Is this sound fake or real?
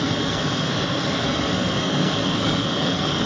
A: fake